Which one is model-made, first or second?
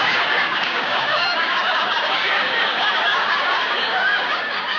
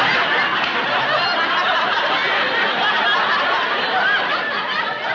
first